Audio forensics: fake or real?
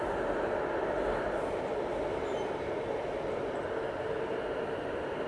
real